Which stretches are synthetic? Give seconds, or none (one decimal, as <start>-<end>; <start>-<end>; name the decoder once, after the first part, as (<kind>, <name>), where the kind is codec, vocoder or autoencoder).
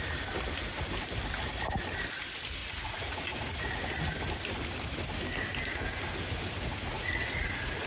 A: 2.6-3.7 (vocoder, Vocos); 6.9-7.9